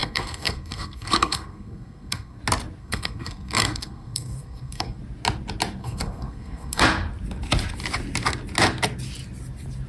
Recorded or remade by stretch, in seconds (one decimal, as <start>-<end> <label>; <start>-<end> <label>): 0.0-2.4 remade; 2.4-2.8 recorded; 2.8-5.0 remade; 5.0-5.8 recorded; 5.8-6.8 remade; 6.8-9.9 recorded